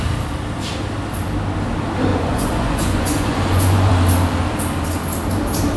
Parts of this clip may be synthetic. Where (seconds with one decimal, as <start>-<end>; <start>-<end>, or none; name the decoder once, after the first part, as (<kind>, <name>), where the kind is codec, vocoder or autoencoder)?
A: 2.1-3.9 (vocoder, Vocos)

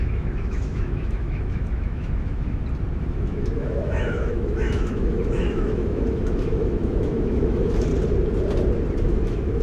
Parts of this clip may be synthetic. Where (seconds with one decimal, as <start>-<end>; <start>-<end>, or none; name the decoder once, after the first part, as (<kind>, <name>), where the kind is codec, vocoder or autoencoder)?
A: 0.0-2.6 (autoencoder, DAC-VAE); 3.1-7.9; 9.0-9.6

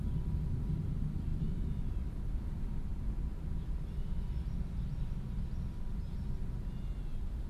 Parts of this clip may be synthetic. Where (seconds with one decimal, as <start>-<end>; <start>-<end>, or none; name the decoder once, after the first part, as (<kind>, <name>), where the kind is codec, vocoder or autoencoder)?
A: none

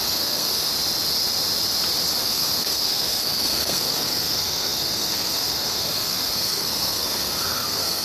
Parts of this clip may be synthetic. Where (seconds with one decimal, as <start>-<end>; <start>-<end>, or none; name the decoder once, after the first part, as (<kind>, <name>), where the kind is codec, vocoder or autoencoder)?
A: 0.0-0.7 (codec, SNAC); 2.2-8.0